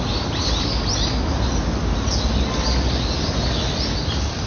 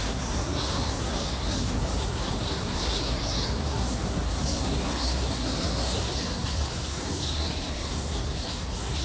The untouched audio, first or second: first